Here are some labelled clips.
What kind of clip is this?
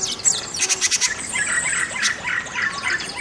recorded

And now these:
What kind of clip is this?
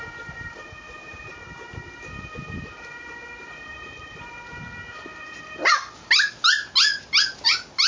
recorded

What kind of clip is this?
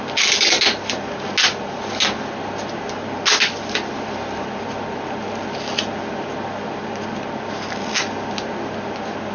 recorded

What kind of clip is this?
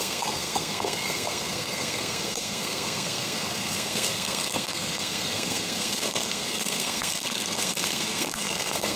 remade